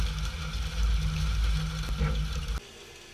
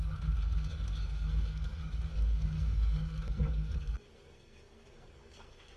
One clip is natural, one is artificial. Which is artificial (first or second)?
second